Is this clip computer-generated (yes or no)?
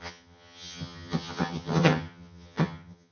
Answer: yes